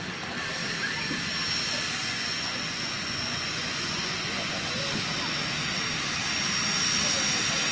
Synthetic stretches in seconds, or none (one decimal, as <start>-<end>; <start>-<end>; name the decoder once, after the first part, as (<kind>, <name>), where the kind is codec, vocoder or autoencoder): 2.0-4.8 (vocoder, Vocos)